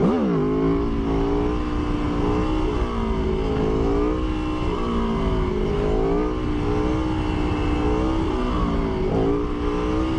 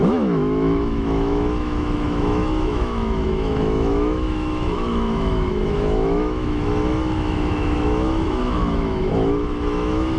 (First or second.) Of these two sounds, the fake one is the second